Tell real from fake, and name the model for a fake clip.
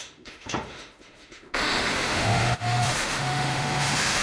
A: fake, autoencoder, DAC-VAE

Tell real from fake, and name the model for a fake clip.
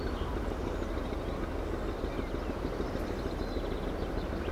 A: real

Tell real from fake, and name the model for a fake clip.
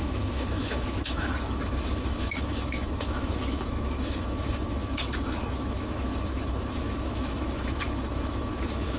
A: fake, autoencoder, DAC-VAE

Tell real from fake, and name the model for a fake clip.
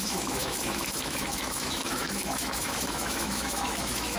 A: fake, autoencoder, DAC-VAE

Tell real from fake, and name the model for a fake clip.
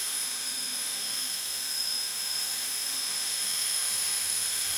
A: fake, autoencoder, DAC-VAE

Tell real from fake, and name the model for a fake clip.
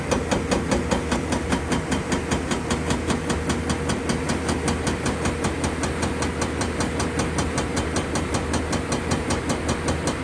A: real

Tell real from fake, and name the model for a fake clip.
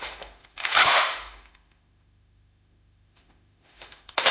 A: fake, autoencoder, DAC-VAE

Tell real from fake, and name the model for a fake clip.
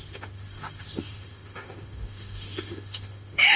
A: fake, autoencoder, DAC-VAE